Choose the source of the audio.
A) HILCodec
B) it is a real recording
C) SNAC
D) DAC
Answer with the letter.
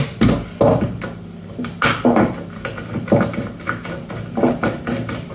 B